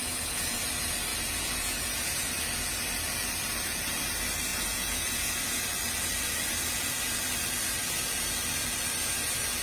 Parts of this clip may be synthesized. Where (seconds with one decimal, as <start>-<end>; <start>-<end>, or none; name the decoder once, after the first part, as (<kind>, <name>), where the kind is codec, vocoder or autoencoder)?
0.0-0.6 (vocoder, Vocos); 1.1-2.4; 4.5-5.6